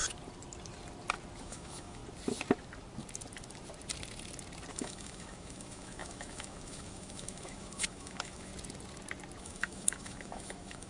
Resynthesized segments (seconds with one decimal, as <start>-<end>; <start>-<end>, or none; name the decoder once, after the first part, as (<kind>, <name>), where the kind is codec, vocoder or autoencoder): 1.4-2.0 (autoencoder, DAC-VAE); 4.7-8.5; 9.4-10.9